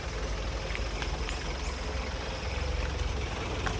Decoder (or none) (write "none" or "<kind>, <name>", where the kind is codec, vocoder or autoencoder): none